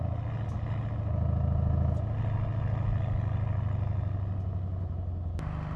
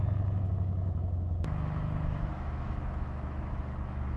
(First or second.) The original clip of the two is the first